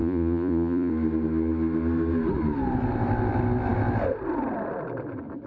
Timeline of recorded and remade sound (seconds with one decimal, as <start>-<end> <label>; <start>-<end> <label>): 0.0-0.9 remade; 0.9-5.5 recorded